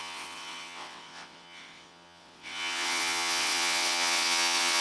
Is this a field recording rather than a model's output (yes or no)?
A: no